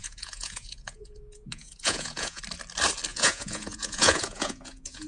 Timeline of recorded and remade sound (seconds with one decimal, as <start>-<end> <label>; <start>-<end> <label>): 0.0-2.4 remade; 2.4-3.1 recorded; 3.1-5.1 remade